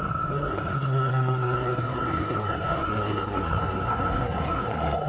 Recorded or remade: remade